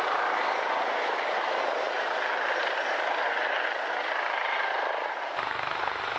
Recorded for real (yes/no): yes